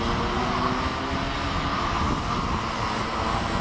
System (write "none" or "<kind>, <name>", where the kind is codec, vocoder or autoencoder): none